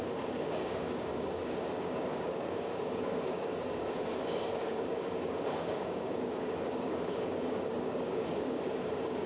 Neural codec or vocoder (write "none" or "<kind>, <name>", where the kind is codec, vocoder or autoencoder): codec, DAC